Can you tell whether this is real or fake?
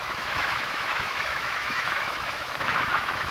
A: fake